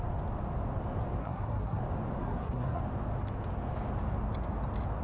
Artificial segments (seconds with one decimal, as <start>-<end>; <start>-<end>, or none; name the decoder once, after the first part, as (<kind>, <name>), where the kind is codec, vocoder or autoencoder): 1.2-1.8 (codec, SNAC); 2.2-2.8